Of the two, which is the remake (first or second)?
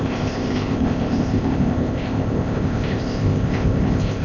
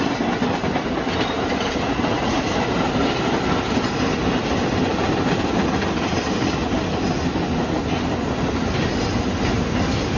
first